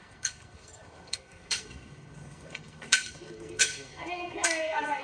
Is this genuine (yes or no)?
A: no